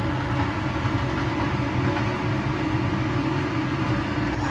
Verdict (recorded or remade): recorded